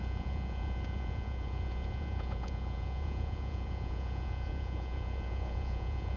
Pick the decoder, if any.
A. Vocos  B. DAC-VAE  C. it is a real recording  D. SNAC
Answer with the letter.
A